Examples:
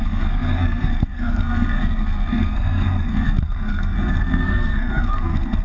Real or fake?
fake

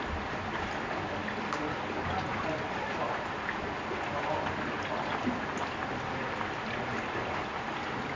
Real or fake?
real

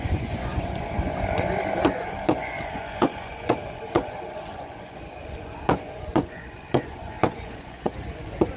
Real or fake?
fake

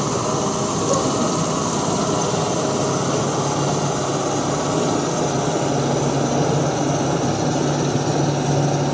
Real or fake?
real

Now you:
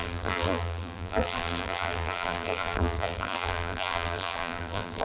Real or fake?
fake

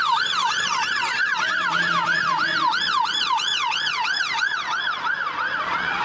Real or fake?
fake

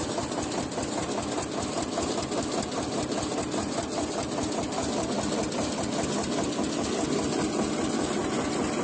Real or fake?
real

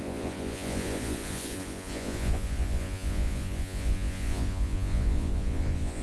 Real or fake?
fake